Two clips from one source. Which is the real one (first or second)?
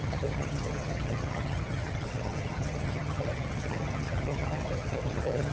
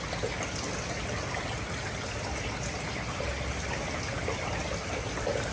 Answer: second